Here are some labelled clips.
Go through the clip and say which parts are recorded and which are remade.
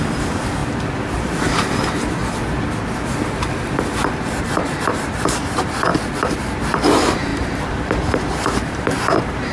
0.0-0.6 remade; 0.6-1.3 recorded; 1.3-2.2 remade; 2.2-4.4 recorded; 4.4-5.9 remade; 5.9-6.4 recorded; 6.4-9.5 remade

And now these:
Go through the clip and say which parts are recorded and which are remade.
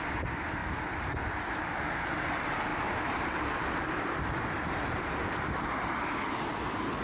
0.0-2.7 recorded; 2.7-5.7 remade; 5.7-7.0 recorded